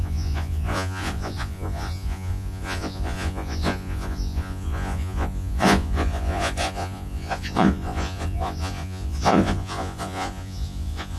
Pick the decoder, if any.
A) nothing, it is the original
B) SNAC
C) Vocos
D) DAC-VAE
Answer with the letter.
C